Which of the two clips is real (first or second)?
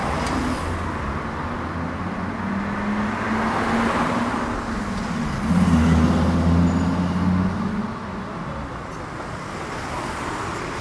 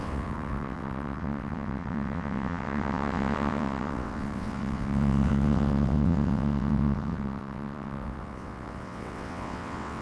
first